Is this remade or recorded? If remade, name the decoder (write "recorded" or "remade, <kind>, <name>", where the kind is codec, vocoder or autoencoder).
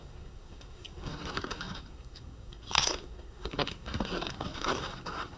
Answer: remade, codec, SNAC